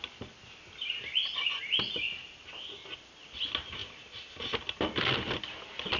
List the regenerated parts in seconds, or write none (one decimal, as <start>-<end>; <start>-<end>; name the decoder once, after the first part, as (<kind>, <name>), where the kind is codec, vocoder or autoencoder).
none